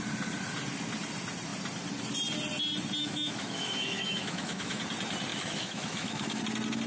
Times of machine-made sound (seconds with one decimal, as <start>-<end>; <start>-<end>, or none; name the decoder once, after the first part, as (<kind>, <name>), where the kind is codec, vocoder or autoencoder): 3.0-4.8 (autoencoder, DAC-VAE); 5.3-6.4